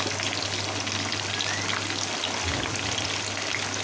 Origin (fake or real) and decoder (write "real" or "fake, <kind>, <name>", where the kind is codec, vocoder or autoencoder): real